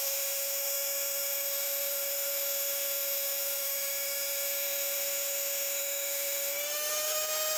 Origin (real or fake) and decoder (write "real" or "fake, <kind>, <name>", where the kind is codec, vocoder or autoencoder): fake, autoencoder, DAC-VAE